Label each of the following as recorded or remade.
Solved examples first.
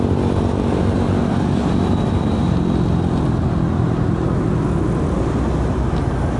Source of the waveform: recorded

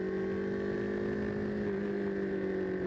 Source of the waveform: recorded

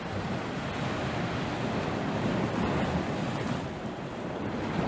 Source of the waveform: recorded